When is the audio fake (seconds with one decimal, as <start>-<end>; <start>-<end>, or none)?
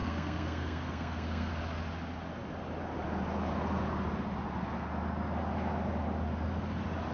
0.0-1.5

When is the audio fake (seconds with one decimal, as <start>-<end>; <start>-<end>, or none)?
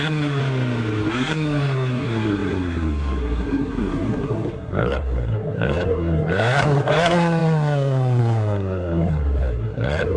0.0-0.4; 1.1-10.2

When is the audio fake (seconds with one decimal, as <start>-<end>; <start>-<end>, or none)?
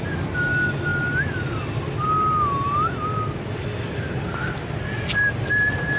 none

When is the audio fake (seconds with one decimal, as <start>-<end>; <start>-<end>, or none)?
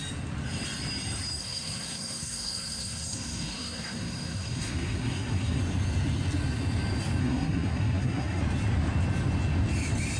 1.4-5.6; 7.2-8.4